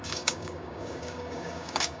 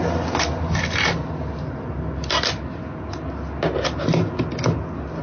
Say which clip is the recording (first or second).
second